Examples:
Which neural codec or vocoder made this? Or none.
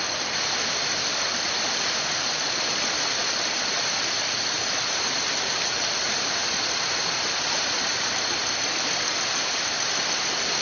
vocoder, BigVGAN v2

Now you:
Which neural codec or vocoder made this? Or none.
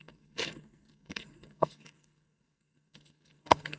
codec, SNAC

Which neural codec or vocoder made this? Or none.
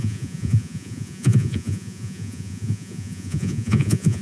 vocoder, Vocos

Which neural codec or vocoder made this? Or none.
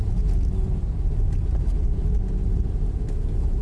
none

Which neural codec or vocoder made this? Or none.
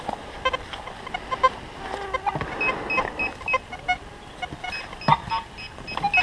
none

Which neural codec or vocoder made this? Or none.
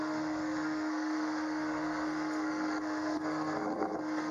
codec, SNAC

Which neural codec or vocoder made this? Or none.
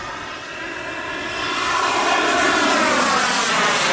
none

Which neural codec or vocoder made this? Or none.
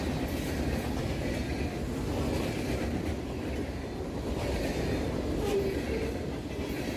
none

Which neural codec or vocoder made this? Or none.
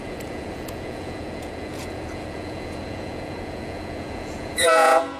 vocoder, Vocos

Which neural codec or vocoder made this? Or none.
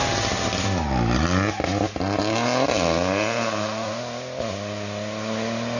none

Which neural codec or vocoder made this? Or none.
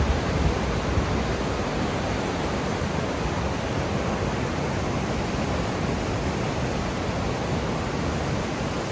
none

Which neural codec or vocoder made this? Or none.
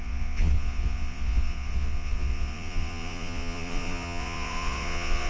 vocoder, Vocos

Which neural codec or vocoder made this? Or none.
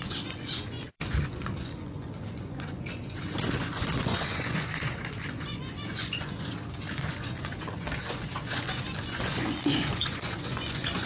vocoder, Vocos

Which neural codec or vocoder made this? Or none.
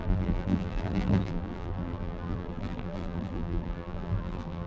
vocoder, BigVGAN v2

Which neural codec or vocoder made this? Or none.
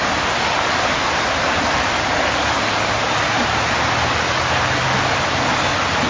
none